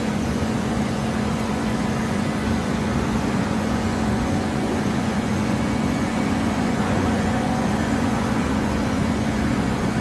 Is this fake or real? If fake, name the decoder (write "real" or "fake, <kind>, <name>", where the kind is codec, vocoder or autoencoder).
fake, vocoder, Vocos